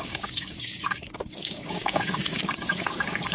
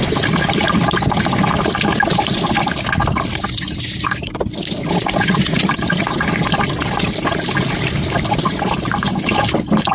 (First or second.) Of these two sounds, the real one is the second